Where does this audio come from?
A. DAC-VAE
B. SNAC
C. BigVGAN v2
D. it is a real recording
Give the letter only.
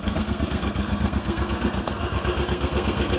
B